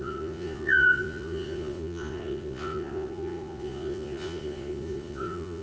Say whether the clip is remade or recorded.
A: remade